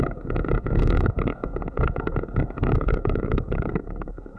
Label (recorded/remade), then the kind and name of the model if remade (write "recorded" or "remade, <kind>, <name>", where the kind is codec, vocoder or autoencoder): remade, codec, SNAC